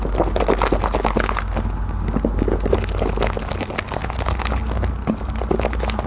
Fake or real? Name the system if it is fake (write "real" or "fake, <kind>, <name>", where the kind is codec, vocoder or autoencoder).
real